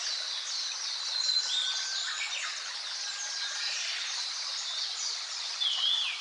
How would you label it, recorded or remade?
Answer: recorded